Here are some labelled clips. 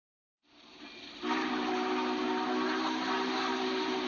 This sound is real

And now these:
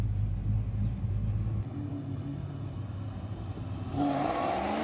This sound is real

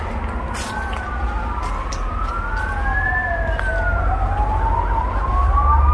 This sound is real